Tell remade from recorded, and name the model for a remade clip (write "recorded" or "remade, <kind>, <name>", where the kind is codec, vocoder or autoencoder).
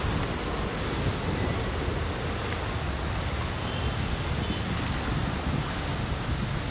recorded